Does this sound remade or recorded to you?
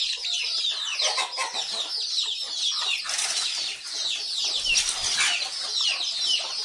recorded